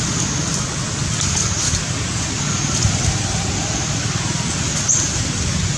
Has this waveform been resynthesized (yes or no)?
no